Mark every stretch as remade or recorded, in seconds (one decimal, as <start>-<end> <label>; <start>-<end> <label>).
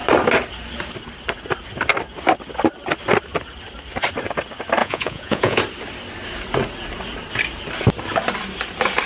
0.0-4.8 recorded; 4.8-5.6 remade; 5.6-9.1 recorded